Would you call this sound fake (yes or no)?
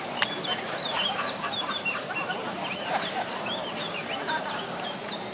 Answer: yes